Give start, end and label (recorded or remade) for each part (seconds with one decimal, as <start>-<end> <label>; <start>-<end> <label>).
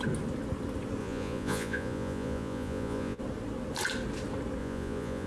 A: 0.0-1.0 recorded; 1.0-3.2 remade; 3.2-4.6 recorded; 4.6-5.3 remade